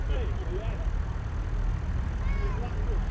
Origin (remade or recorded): recorded